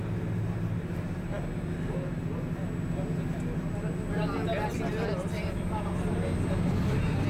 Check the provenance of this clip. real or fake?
real